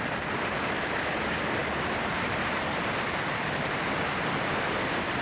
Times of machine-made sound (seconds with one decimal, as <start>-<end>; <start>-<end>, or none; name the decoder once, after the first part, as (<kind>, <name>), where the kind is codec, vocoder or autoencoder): 1.6-3.9 (vocoder, BigVGAN v2)